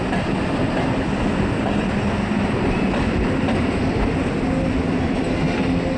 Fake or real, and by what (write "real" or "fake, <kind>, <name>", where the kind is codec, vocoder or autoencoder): real